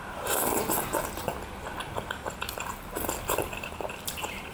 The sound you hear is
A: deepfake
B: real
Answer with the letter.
B